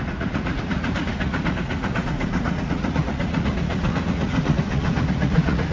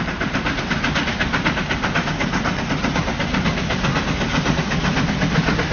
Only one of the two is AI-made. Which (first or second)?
first